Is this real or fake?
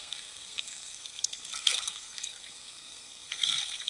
fake